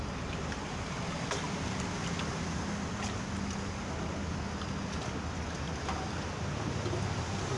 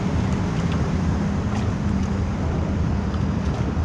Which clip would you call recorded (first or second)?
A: first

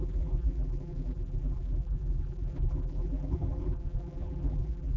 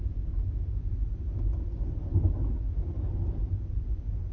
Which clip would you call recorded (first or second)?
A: second